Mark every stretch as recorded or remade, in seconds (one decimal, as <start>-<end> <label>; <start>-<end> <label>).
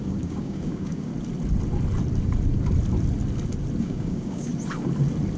0.0-1.1 remade; 1.1-3.8 recorded; 3.8-4.5 remade; 4.5-5.4 recorded